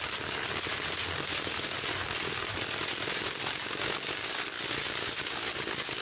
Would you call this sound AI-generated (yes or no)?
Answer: no